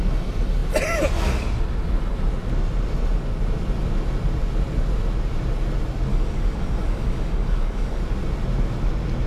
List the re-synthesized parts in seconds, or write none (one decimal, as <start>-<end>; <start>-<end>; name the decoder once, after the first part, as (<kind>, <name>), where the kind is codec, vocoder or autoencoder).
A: 6.1-8.0 (codec, DAC)